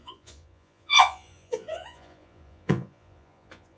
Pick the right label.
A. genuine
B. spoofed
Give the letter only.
B